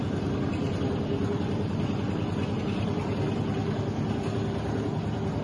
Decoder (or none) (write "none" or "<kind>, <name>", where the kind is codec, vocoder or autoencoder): none